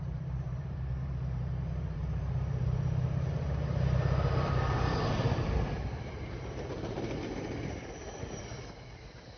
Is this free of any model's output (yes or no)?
no